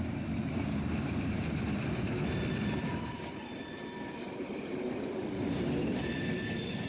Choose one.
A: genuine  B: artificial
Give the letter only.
B